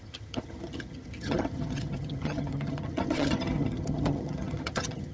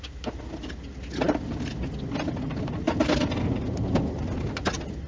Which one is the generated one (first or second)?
first